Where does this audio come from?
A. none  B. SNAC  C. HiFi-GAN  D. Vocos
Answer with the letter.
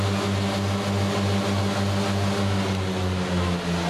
A